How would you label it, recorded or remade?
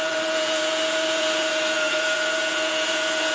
remade